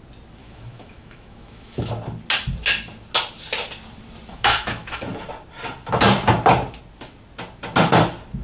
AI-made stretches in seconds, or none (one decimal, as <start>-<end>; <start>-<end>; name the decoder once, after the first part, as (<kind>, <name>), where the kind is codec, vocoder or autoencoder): 0.4-1.9 (autoencoder, DAC-VAE); 4.3-5.1